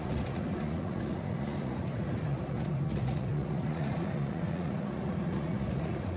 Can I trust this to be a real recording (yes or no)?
no